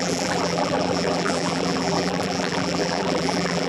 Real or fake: fake